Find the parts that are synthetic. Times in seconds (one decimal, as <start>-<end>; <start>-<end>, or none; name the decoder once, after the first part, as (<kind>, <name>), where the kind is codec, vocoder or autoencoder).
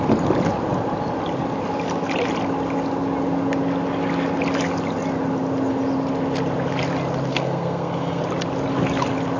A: 7.3-8.2 (codec, SNAC)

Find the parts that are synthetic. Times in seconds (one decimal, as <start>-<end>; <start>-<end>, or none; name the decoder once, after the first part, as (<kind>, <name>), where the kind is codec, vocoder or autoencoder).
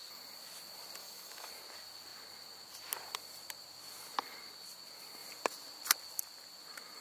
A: 1.0-1.5 (autoencoder, DAC-VAE)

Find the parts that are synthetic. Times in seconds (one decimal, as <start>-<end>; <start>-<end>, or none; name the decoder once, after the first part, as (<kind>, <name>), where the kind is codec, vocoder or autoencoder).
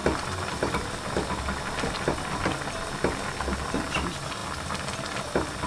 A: none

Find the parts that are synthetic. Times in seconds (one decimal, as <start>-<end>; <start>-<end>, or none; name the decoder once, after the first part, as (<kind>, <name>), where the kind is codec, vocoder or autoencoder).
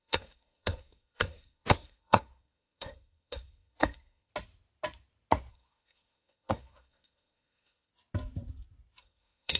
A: 0.0-4.3 (codec, SNAC); 5.5-7.9; 9.0-9.6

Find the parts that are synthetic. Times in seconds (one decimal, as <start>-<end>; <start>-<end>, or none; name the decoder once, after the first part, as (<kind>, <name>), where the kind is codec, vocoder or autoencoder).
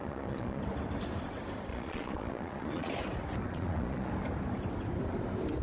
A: 0.0-0.6 (vocoder, Vocos); 1.7-2.9; 3.4-4.1